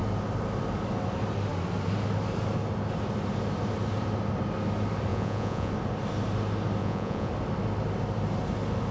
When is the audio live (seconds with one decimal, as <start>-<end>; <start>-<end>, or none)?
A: 0.0-5.1; 5.7-6.8; 7.3-8.9